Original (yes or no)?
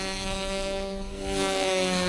no